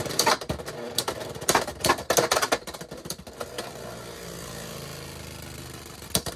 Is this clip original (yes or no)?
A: yes